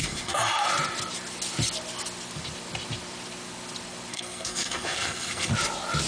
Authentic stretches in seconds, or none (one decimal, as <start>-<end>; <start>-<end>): 0.4-4.1; 5.5-6.1